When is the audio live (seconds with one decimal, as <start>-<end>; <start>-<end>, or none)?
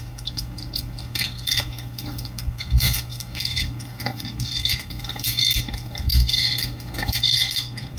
none